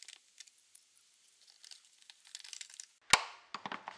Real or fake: real